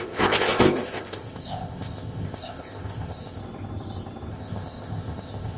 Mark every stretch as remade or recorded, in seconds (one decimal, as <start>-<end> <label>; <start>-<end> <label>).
0.0-3.4 remade; 3.4-4.3 recorded; 4.3-5.6 remade